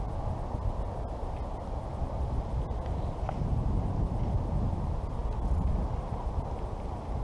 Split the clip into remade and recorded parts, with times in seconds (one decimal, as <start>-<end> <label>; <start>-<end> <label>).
0.0-7.2 recorded